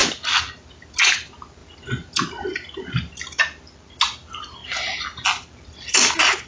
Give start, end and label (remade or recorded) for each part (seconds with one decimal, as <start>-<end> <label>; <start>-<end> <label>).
0.0-6.5 recorded